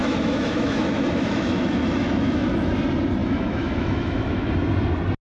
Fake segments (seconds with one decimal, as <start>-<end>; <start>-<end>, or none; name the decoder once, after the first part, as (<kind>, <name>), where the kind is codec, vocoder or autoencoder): 0.0-2.7 (autoencoder, DAC-VAE); 3.2-4.5